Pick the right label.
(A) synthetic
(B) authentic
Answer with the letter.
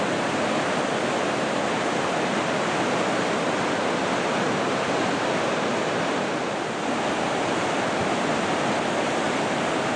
B